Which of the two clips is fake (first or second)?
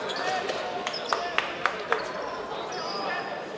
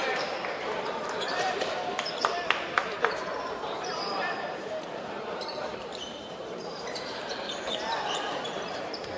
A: second